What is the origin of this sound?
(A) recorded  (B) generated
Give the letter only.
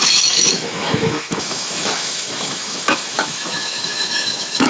B